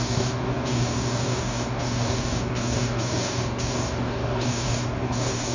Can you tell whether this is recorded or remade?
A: remade